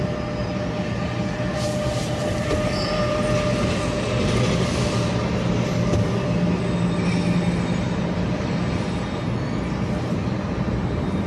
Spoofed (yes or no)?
no